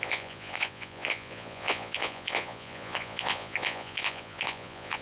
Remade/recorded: remade